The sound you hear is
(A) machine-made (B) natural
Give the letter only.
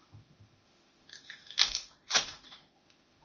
A